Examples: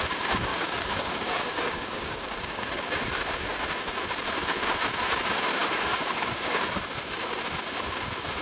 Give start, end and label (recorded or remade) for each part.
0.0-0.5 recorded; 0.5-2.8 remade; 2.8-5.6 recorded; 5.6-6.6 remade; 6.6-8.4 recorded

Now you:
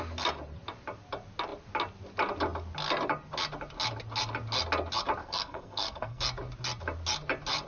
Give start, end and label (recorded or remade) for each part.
0.0-5.2 recorded; 5.2-6.2 remade; 6.2-7.7 recorded